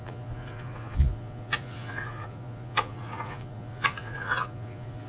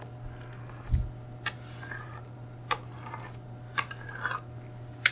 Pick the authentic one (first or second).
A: second